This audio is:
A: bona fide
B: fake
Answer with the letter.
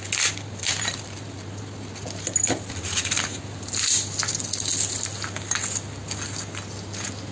A